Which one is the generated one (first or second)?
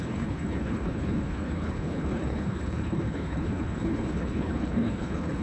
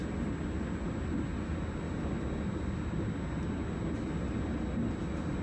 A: first